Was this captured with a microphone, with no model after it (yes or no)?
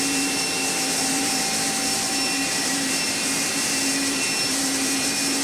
no